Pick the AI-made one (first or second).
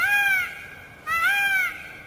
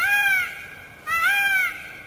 second